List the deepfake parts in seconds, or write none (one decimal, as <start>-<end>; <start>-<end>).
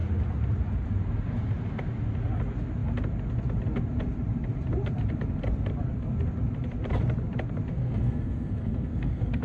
7.7-9.4